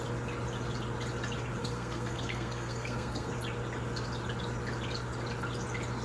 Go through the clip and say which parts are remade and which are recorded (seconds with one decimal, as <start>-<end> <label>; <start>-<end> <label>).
0.0-1.6 recorded; 1.6-3.3 remade; 3.3-6.0 recorded